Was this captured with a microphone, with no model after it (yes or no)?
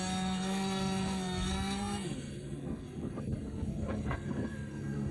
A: no